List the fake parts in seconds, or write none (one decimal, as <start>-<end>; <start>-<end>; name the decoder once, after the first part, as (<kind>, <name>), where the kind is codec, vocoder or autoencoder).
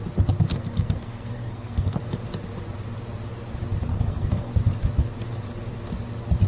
0.5-2.0 (codec, SNAC); 3.9-4.5